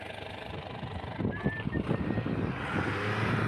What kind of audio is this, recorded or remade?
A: recorded